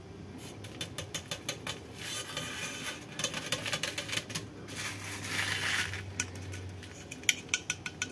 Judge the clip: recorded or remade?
recorded